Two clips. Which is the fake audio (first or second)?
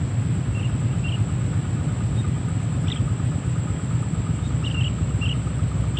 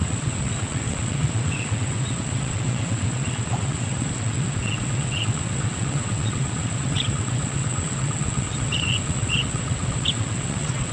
second